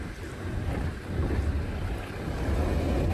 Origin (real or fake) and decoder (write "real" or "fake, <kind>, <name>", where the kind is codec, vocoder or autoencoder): real